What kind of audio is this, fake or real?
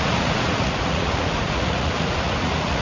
fake